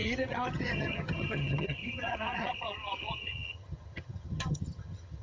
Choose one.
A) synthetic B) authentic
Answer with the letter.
A